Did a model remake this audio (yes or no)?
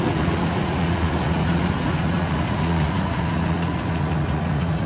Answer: yes